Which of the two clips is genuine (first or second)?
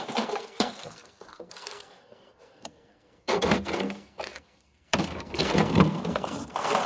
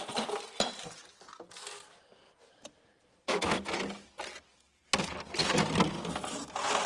second